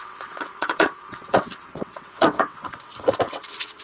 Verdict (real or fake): fake